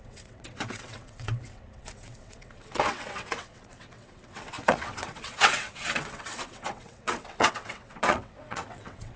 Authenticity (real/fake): fake